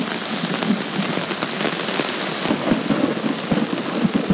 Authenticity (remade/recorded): recorded